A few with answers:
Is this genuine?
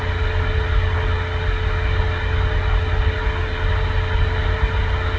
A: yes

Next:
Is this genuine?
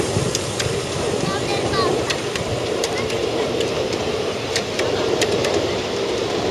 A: no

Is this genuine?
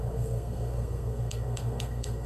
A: no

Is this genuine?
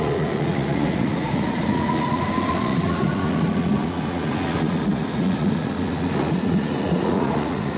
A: no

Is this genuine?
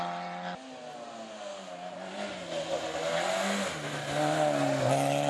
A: yes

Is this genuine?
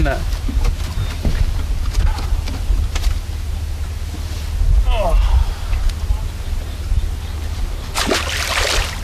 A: yes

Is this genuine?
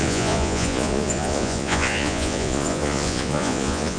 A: no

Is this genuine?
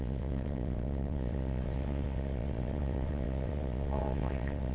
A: no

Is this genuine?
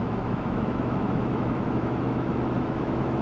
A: no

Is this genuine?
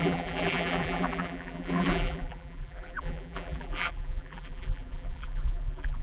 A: no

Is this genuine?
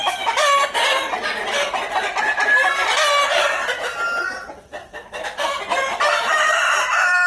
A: yes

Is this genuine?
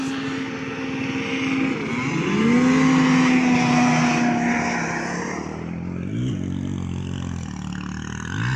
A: yes